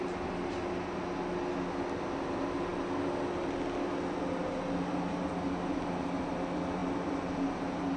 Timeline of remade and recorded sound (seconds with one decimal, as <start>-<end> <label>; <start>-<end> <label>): 0.0-8.0 recorded